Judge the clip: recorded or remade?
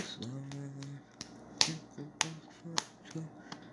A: recorded